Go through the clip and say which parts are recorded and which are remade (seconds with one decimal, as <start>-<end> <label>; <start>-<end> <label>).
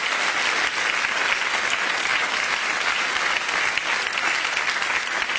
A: 0.0-5.4 recorded